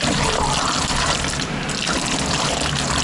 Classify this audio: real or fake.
fake